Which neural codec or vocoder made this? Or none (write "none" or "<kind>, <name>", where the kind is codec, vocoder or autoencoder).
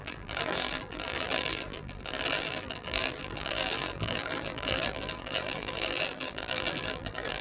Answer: vocoder, BigVGAN v2